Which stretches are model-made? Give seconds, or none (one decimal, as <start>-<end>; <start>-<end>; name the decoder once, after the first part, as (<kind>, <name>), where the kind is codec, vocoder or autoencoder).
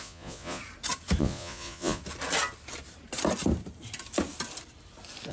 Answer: 0.0-0.6 (vocoder, Vocos); 1.2-2.0